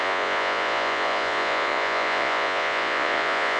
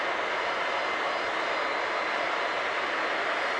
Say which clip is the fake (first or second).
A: first